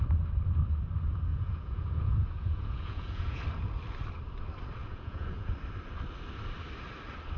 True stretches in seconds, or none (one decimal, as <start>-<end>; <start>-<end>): 0.0-1.3; 3.4-4.8; 5.5-7.4